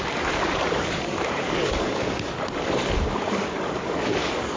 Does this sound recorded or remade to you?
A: remade